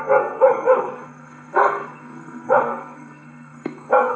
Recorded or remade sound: remade